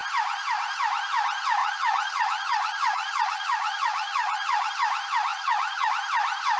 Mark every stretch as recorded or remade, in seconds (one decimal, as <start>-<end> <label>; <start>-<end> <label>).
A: 0.0-1.6 recorded; 1.6-4.7 remade; 4.7-5.3 recorded; 5.3-5.9 remade; 5.9-6.6 recorded